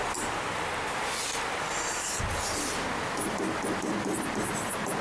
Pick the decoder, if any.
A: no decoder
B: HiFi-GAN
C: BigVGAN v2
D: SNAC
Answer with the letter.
A